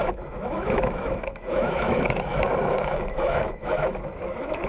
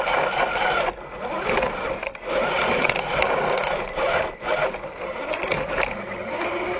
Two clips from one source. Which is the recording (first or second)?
second